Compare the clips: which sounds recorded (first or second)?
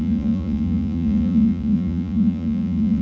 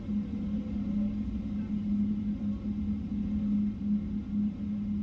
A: second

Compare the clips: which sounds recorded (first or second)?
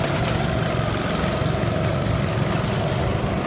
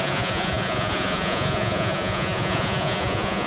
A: first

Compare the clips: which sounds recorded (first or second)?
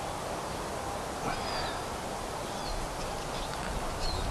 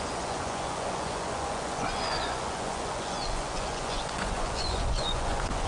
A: first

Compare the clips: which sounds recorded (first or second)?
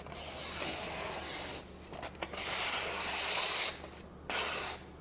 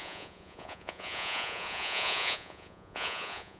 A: first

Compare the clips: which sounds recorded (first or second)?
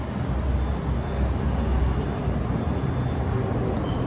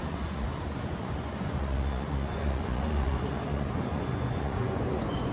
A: first